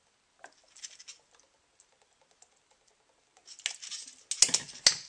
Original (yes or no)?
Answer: yes